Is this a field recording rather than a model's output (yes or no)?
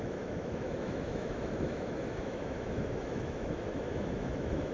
no